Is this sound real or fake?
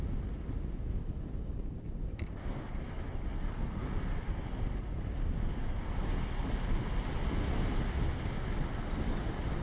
real